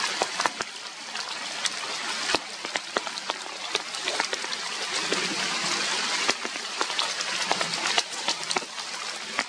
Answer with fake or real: real